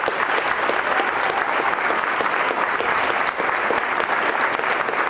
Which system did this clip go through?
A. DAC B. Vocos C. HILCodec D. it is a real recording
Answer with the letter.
D